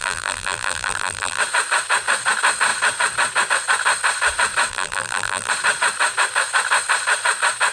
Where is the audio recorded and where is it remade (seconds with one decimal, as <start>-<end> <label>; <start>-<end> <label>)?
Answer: 0.0-1.4 remade; 1.4-4.7 recorded; 4.7-5.5 remade; 5.5-7.7 recorded